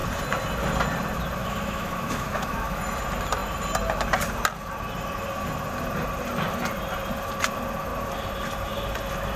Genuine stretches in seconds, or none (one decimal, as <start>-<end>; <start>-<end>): 0.0-1.4; 2.8-9.4